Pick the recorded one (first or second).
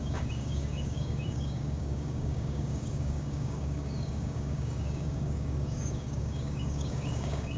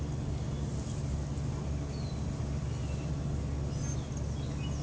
second